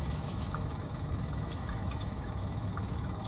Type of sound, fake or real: fake